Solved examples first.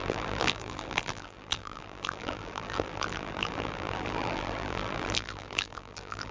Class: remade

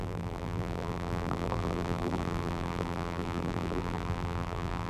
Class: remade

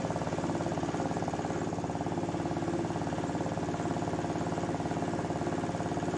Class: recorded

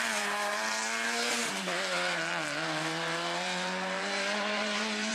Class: remade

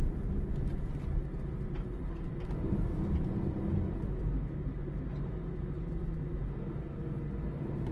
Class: recorded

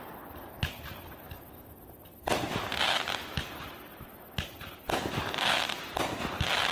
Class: recorded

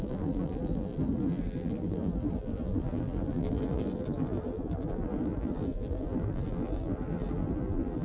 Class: remade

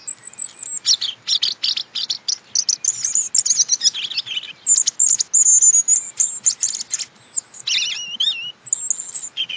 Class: recorded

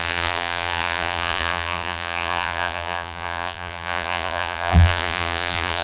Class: remade